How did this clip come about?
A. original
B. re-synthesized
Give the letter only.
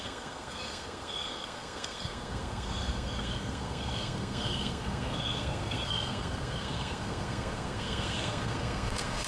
B